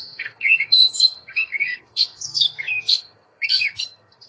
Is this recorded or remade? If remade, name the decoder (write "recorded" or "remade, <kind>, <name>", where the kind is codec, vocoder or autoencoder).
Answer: remade, codec, SNAC